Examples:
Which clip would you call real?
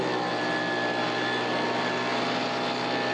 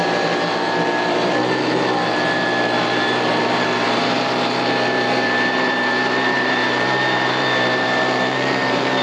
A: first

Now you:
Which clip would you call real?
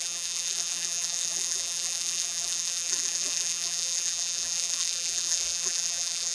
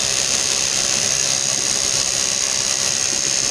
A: second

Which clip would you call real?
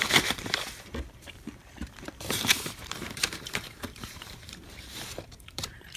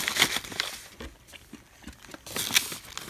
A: second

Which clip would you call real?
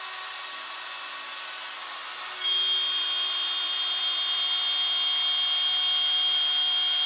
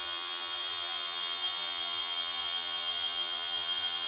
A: first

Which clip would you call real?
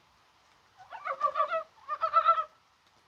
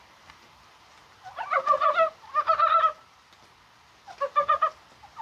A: first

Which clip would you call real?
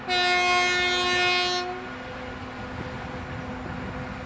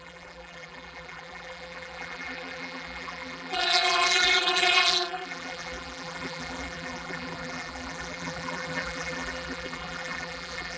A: first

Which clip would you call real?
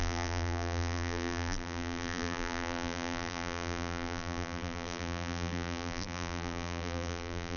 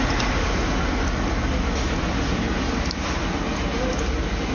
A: second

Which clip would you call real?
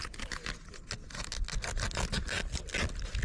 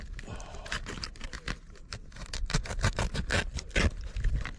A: first